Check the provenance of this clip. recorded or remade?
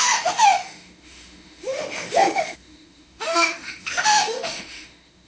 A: remade